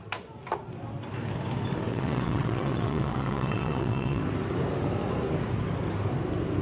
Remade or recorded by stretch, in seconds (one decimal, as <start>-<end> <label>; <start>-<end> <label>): 0.0-1.9 recorded; 1.9-4.2 remade; 4.2-6.6 recorded